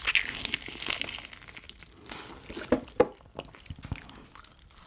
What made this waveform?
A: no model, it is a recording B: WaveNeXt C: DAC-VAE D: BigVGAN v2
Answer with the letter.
A